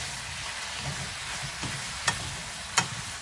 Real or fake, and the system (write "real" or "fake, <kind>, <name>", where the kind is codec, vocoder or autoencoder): real